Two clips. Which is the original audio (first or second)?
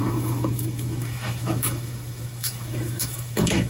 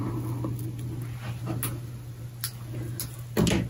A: second